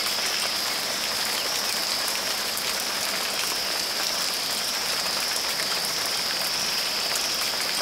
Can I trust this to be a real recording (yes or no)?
yes